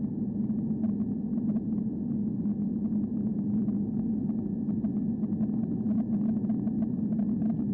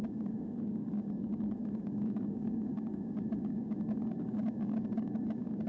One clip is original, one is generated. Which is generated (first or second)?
second